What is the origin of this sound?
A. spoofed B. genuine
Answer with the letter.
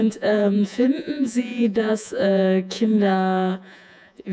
A